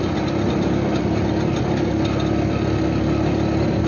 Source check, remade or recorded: recorded